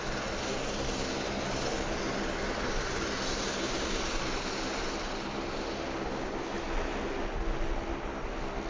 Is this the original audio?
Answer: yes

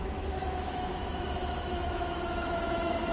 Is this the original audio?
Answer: no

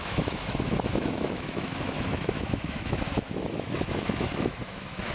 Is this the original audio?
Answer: no